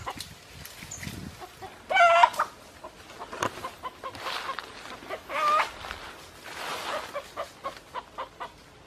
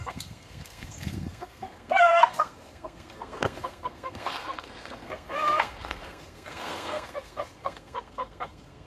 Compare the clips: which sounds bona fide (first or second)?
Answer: first